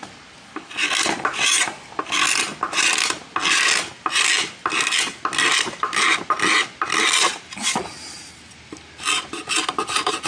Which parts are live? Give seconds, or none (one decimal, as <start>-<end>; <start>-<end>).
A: 0.0-10.3